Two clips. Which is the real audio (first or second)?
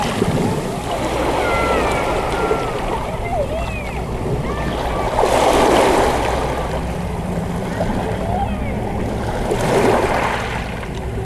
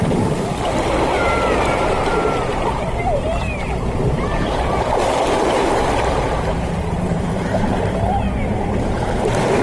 first